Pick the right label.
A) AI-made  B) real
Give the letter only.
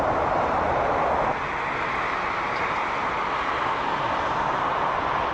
B